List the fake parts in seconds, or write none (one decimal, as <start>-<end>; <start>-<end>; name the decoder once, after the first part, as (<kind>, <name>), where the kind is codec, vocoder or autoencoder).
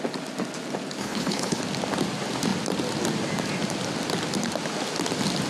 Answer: 1.0-1.6 (codec, HILCodec)